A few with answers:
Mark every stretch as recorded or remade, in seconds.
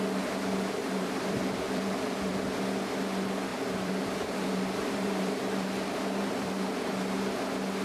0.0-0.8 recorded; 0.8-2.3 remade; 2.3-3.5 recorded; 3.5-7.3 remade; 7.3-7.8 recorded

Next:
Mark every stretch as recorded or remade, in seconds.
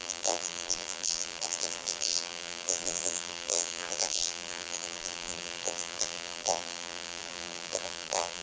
0.0-8.4 remade